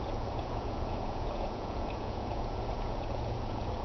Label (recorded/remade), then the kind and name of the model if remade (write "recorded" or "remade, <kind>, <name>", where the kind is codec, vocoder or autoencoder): remade, vocoder, Vocos